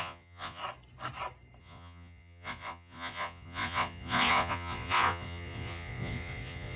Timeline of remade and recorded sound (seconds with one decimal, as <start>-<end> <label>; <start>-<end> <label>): 0.0-0.6 remade; 0.6-1.6 recorded; 1.6-6.8 remade